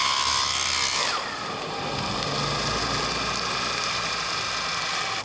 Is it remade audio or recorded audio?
recorded